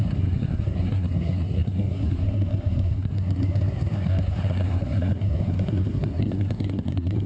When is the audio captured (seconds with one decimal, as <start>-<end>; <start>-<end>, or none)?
none